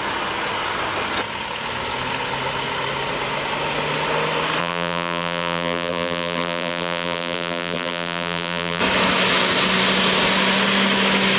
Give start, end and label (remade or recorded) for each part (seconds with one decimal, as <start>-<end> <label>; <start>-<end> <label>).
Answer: 0.0-4.6 recorded; 4.6-8.8 remade; 8.8-11.4 recorded